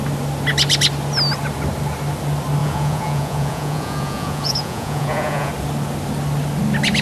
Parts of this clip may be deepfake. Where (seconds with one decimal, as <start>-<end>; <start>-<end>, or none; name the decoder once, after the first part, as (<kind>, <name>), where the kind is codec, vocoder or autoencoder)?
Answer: 2.6-5.5 (vocoder, Vocos)